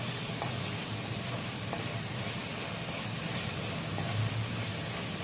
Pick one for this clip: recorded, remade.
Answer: recorded